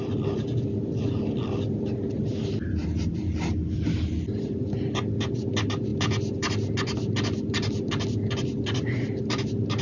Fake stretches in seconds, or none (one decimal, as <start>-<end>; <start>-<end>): none